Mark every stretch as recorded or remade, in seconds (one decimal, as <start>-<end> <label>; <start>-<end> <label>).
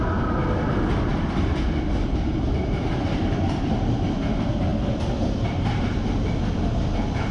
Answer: 0.0-1.1 recorded; 1.1-3.2 remade; 3.2-4.7 recorded; 4.7-5.2 remade; 5.2-7.3 recorded